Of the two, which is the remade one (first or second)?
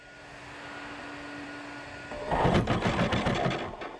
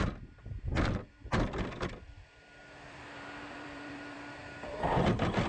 second